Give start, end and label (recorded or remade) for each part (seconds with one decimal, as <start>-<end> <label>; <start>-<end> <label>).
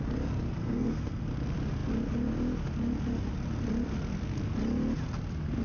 0.0-0.6 recorded; 0.6-1.2 remade; 1.2-5.6 recorded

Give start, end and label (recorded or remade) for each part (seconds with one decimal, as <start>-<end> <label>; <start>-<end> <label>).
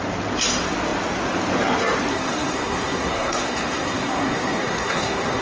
0.0-2.1 recorded; 2.1-5.4 remade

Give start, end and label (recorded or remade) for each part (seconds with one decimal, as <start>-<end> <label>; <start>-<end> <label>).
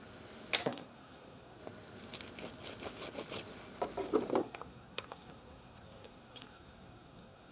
0.0-0.6 recorded; 0.6-1.6 remade; 1.6-4.4 recorded; 4.4-7.5 remade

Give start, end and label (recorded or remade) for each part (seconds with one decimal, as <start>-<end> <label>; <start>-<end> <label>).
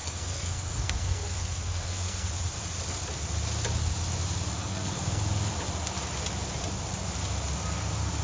0.0-2.3 remade; 2.3-4.6 recorded; 4.6-5.2 remade; 5.2-8.2 recorded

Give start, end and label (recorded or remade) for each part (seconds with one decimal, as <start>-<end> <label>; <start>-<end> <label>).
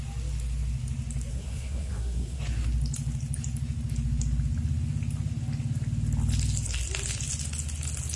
0.0-1.3 recorded; 1.3-2.4 remade; 2.4-8.2 recorded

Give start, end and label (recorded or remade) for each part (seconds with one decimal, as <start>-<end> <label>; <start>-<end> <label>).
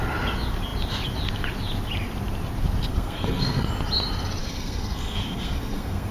0.0-2.9 recorded; 2.9-3.7 remade; 3.7-4.4 recorded; 4.4-6.1 remade